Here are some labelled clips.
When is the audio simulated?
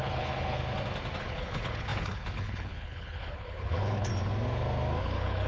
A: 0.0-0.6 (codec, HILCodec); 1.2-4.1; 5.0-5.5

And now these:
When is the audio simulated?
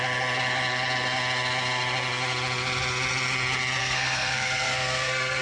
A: 3.8-5.4 (codec, SNAC)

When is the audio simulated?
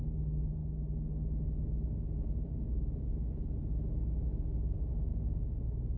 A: none